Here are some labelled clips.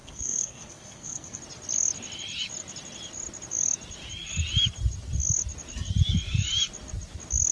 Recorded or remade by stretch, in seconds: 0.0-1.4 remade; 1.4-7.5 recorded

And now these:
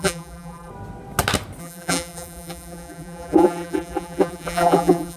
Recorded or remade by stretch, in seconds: 0.0-0.7 remade; 0.7-1.6 recorded; 1.6-5.2 remade